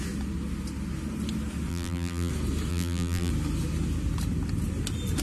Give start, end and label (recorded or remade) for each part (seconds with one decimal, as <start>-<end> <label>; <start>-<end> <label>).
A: 0.0-1.7 recorded; 1.7-2.3 remade; 2.3-2.7 recorded; 2.7-3.3 remade; 3.3-5.2 recorded